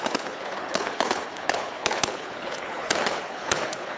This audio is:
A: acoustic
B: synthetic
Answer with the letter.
B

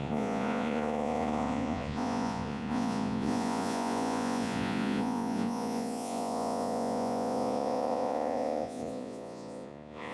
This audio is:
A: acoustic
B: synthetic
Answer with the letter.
B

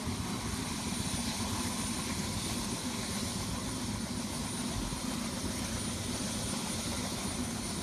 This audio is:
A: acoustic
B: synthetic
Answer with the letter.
A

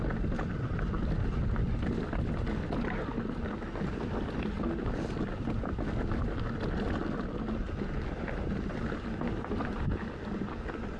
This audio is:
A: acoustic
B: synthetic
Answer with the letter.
A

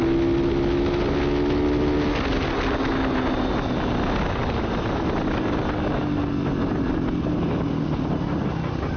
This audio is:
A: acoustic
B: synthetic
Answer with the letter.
A